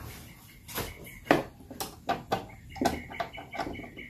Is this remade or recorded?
recorded